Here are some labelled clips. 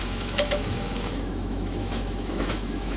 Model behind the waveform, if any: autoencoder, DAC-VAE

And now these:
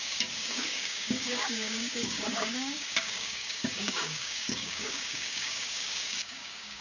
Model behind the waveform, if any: codec, DAC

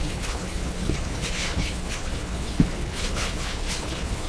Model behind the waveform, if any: codec, HILCodec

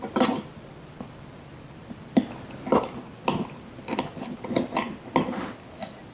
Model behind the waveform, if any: none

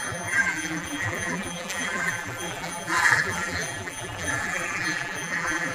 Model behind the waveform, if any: vocoder, BigVGAN v2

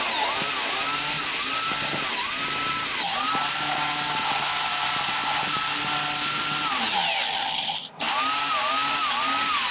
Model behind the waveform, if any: none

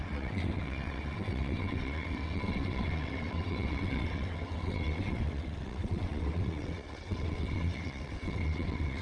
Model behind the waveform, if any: vocoder, WaveNeXt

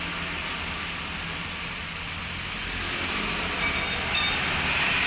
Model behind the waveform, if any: none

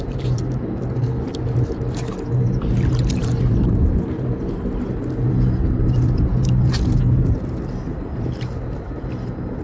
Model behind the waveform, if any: none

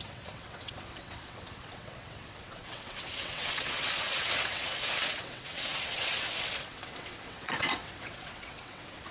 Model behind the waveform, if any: vocoder, WaveNeXt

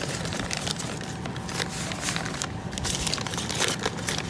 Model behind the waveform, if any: none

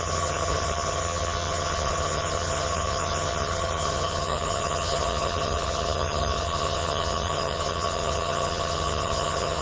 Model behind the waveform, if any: vocoder, HiFi-GAN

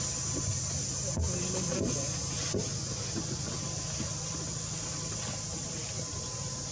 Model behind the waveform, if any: none